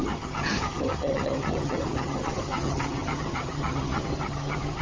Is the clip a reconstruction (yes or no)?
yes